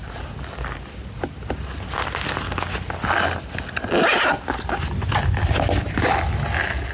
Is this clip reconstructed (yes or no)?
no